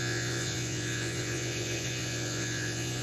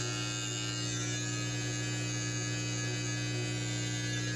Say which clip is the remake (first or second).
first